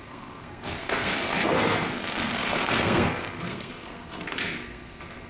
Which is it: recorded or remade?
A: remade